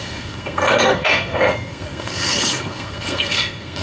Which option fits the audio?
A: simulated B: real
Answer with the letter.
A